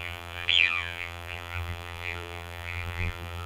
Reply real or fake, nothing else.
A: fake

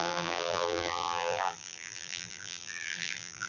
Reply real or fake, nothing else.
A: fake